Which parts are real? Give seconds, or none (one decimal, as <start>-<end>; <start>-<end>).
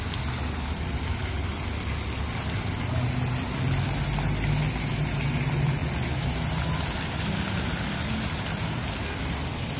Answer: 0.0-9.8